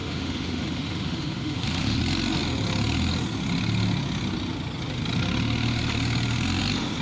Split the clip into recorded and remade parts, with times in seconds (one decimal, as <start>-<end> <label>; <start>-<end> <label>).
0.0-2.0 remade; 2.0-7.0 recorded